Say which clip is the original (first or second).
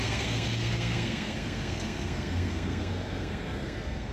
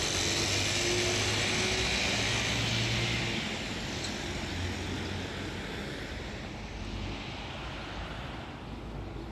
second